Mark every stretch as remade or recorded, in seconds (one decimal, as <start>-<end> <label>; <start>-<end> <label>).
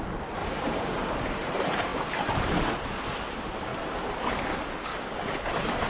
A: 0.0-0.4 recorded; 0.4-1.1 remade; 1.1-4.9 recorded; 4.9-5.9 remade